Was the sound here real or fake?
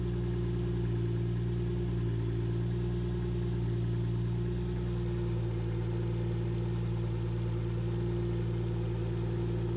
real